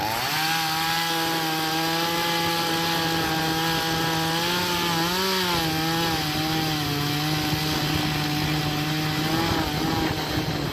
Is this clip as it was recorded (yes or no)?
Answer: yes